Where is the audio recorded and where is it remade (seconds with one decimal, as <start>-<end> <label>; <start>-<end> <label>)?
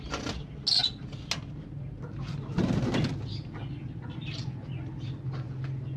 0.0-6.0 recorded